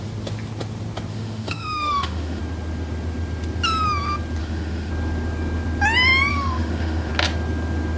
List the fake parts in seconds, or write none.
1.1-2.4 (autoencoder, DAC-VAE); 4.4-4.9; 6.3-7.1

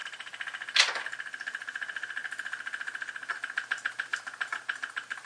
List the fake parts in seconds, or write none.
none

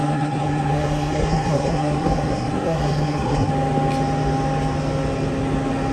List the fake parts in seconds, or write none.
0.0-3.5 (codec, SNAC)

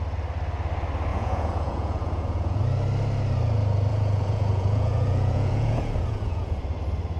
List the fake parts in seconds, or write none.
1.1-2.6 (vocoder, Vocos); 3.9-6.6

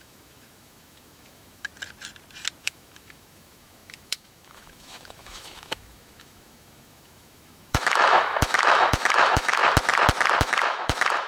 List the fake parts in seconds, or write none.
0.0-1.7 (autoencoder, DAC-VAE); 2.6-9.6; 10.4-11.3

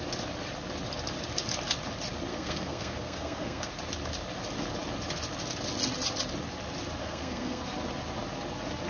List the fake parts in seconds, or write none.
2.3-3.7 (codec, SNAC); 7.0-7.6

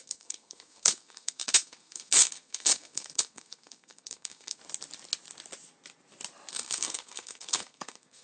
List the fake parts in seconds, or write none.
0.0-4.6 (codec, SNAC); 6.5-8.2